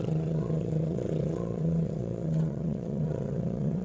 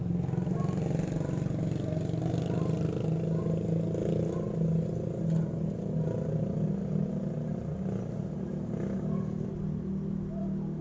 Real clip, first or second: second